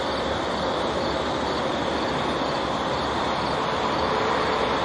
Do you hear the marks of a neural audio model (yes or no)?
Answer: no